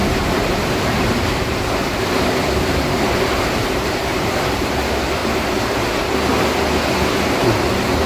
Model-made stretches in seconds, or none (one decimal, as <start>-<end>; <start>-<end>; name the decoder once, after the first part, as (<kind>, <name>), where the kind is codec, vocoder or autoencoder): 0.0-4.6 (vocoder, BigVGAN v2)